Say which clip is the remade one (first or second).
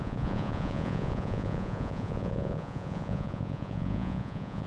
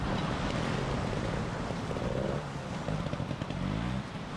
first